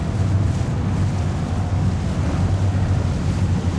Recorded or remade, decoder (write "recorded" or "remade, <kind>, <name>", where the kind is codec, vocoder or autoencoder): recorded